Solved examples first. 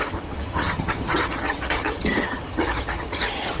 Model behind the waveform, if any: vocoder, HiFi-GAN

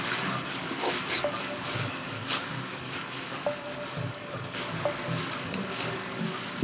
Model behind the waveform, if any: codec, DAC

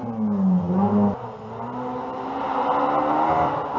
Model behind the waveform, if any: none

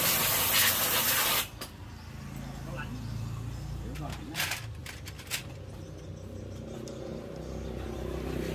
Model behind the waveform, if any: none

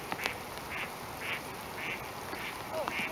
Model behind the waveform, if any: none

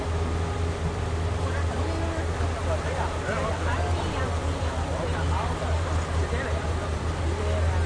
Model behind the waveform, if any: none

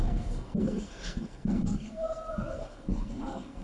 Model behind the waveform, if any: codec, SNAC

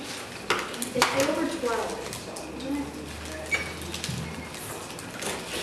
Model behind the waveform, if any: none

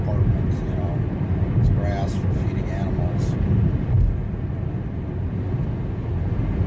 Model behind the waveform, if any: none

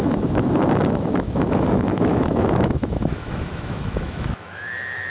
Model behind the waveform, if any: autoencoder, DAC-VAE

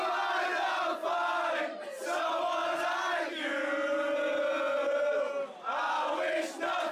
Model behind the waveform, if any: none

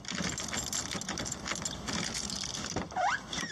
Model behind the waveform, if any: none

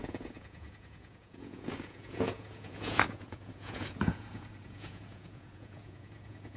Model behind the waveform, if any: vocoder, Vocos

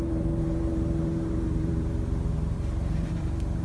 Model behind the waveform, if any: vocoder, BigVGAN v2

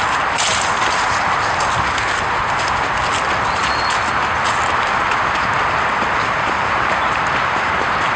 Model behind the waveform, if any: none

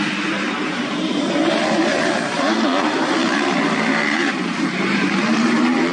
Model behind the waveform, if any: vocoder, BigVGAN v2